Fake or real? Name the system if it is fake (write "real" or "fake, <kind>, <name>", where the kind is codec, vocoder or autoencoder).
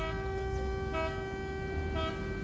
real